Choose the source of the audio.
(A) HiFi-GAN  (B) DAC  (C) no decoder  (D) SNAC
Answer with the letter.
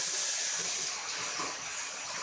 C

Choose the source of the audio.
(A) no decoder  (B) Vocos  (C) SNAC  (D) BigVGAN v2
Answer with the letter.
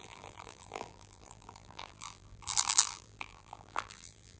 D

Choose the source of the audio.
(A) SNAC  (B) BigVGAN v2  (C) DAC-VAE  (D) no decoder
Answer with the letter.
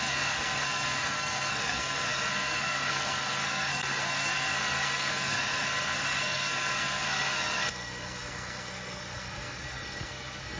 A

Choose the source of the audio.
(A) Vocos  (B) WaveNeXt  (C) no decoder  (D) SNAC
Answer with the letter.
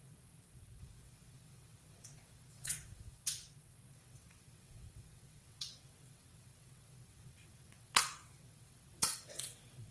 B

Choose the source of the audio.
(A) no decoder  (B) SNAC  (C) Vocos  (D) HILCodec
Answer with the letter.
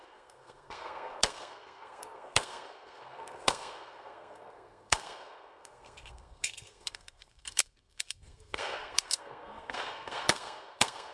B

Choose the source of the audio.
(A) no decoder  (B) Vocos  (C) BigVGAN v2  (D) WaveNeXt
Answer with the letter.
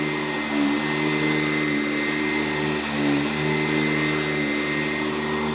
A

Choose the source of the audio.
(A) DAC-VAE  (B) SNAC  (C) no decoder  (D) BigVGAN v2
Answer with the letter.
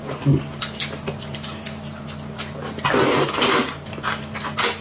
C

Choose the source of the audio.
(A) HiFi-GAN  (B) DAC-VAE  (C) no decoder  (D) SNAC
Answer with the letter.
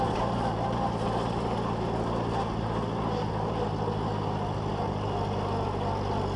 C